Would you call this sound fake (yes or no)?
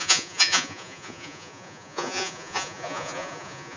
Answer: yes